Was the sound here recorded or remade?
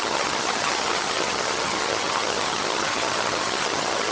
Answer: remade